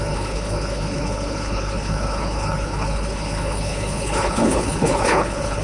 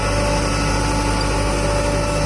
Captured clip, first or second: second